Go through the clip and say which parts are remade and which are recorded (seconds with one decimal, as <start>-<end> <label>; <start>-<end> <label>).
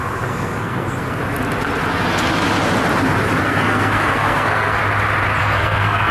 0.0-1.2 remade; 1.2-3.4 recorded; 3.4-4.8 remade; 4.8-5.4 recorded; 5.4-6.1 remade